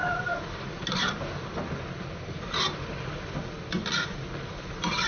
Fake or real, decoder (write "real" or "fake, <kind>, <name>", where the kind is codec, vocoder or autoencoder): real